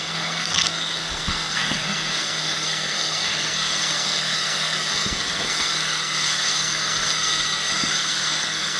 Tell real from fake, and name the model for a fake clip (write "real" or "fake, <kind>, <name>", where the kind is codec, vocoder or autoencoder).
fake, codec, SNAC